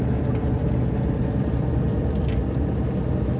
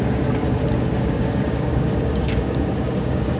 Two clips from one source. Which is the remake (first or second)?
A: second